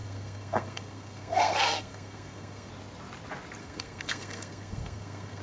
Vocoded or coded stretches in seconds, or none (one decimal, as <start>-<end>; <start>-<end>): 0.0-2.7; 3.6-5.4